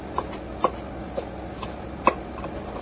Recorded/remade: recorded